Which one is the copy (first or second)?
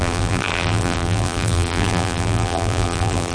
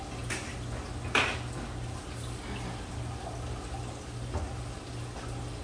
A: first